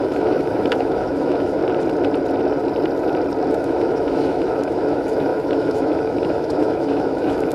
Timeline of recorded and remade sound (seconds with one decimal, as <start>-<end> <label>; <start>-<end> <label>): 0.0-1.6 remade; 1.6-3.5 recorded; 3.5-7.5 remade